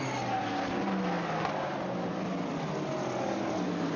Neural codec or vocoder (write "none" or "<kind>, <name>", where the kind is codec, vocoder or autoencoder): none